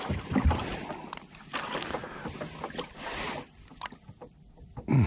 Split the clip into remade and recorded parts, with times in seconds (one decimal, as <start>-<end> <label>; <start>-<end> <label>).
0.0-5.1 recorded